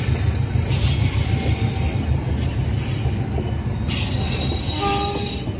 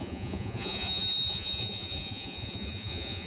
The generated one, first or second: second